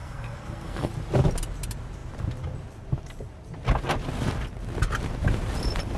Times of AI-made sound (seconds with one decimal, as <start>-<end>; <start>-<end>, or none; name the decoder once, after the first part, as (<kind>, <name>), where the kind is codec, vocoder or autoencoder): 0.0-0.9 (codec, SNAC)